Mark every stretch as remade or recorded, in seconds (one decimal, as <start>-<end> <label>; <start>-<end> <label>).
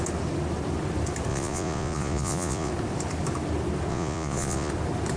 0.0-1.3 recorded; 1.3-2.7 remade; 2.7-3.9 recorded; 3.9-4.7 remade; 4.7-5.2 recorded